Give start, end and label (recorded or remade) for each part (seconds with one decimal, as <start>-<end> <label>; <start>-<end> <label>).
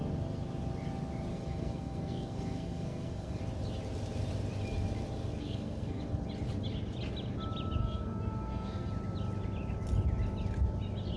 0.0-1.3 recorded; 1.3-3.4 remade; 3.4-5.4 recorded; 5.4-6.0 remade; 6.0-7.8 recorded; 7.8-8.9 remade; 8.9-11.2 recorded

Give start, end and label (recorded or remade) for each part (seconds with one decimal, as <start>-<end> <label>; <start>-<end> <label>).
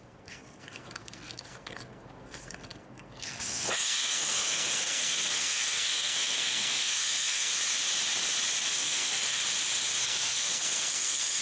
0.0-7.5 remade; 7.5-8.6 recorded; 8.6-9.4 remade; 9.4-10.0 recorded; 10.0-11.4 remade